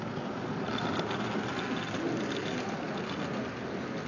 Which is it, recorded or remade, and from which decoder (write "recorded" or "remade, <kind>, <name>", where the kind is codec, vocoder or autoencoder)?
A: recorded